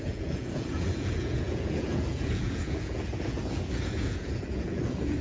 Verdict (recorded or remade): remade